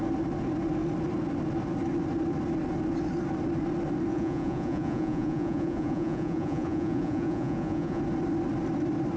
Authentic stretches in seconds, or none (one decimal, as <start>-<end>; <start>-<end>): 0.0-4.1; 8.0-9.2